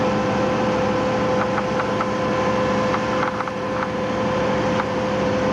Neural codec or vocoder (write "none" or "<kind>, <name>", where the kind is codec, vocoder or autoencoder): none